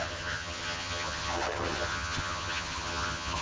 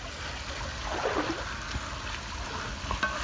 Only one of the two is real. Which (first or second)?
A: second